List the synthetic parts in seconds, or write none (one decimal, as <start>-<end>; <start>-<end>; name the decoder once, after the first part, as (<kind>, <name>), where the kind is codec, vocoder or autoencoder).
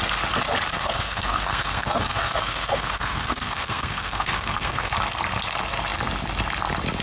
0.7-4.9 (codec, SNAC)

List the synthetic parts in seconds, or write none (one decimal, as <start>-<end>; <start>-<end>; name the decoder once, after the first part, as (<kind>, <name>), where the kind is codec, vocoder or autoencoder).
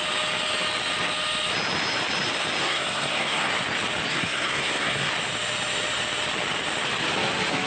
2.6-3.5 (codec, SNAC); 4.1-5.1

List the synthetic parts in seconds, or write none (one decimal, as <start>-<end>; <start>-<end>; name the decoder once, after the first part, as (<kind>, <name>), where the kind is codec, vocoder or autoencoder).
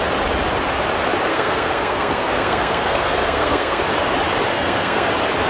1.3-3.8 (codec, SNAC); 4.5-5.1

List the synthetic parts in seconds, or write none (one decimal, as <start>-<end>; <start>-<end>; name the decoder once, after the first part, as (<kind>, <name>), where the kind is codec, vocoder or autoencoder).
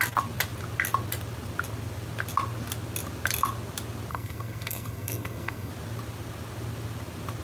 4.1-5.7 (codec, SNAC)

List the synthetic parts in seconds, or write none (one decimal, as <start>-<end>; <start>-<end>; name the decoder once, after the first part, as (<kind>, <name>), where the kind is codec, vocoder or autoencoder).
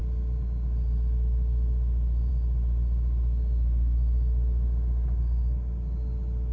none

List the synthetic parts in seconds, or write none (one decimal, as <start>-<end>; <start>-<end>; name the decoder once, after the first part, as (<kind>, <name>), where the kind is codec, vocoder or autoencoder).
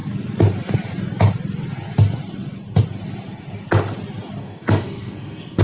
4.4-5.6 (codec, SNAC)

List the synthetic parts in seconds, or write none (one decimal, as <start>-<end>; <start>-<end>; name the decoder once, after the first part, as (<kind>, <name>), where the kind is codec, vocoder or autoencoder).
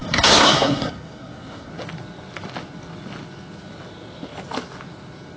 0.0-1.7 (codec, SNAC)